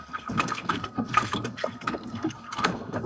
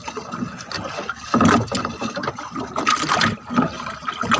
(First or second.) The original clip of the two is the second